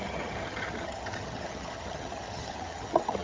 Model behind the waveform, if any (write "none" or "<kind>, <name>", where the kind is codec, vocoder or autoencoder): vocoder, HiFi-GAN